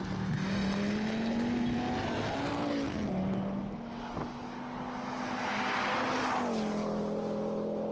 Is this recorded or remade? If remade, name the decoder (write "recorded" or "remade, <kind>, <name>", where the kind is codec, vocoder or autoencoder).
recorded